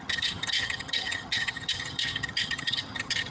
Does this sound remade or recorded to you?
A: remade